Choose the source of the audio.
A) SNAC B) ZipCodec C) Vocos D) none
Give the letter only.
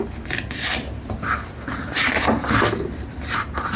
D